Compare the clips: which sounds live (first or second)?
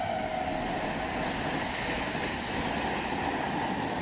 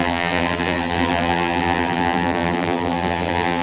first